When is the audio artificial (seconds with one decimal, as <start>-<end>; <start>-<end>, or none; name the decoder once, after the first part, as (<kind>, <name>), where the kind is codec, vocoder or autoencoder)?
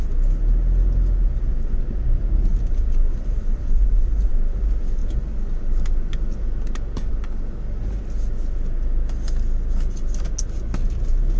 2.5-4.3 (vocoder, BigVGAN v2)